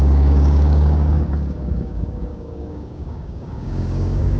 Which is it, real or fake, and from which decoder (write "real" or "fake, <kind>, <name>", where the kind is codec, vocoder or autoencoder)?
fake, codec, DAC